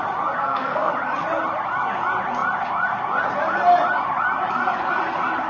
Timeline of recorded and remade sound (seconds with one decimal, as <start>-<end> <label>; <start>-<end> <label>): 0.0-0.4 recorded; 0.4-0.9 remade; 0.9-5.5 recorded